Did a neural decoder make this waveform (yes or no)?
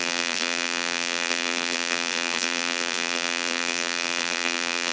yes